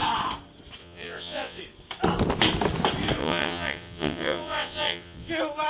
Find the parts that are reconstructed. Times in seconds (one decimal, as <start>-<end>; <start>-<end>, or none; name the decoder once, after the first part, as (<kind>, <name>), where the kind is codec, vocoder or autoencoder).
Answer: 0.8-1.6 (vocoder, WaveNeXt); 3.2-5.3